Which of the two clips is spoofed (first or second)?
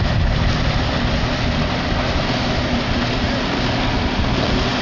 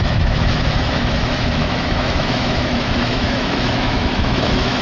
second